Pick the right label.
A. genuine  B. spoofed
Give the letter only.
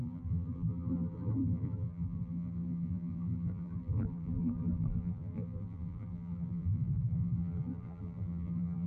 B